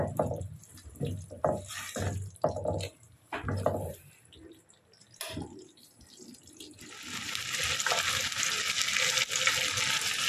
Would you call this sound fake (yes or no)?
no